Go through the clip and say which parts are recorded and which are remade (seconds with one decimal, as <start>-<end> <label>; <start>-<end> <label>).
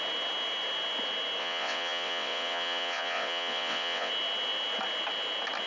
0.0-1.4 recorded; 1.4-4.1 remade; 4.1-5.7 recorded